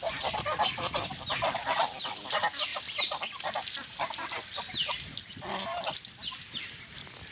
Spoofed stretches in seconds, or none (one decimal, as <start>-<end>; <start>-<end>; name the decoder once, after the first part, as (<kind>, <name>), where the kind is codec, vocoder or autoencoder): none